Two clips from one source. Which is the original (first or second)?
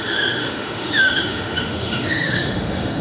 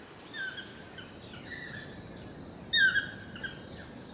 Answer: second